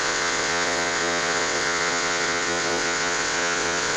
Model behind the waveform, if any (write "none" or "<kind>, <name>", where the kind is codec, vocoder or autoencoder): vocoder, WaveNeXt